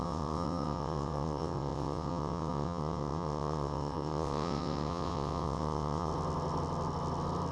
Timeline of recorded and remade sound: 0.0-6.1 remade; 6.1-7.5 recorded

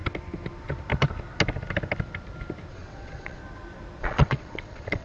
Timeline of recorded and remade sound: 0.0-2.7 recorded; 2.7-3.4 remade; 3.4-4.0 recorded; 4.0-5.0 remade

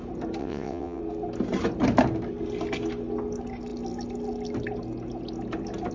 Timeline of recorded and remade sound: 0.0-0.4 recorded; 0.4-1.0 remade; 1.0-5.9 recorded

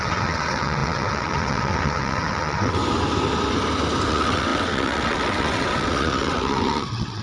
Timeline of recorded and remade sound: 0.0-2.8 remade; 2.8-4.1 recorded; 4.1-7.2 remade